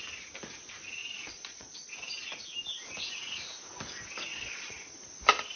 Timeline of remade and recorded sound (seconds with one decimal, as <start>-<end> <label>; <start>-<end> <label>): 0.0-1.0 recorded; 1.0-1.9 remade; 1.9-4.3 recorded; 4.3-5.0 remade; 5.0-5.6 recorded